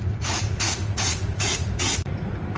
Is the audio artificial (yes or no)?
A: yes